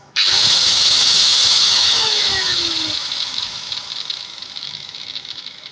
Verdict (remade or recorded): remade